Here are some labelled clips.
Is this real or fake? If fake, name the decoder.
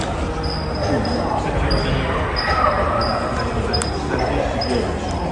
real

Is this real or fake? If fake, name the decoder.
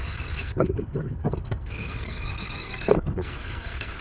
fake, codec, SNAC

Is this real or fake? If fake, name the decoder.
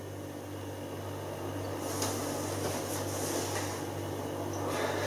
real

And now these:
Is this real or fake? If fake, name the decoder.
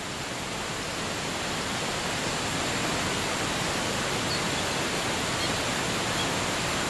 real